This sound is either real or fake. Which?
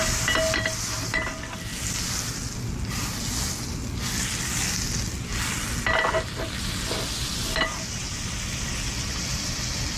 real